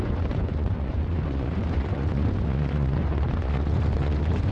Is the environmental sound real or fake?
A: fake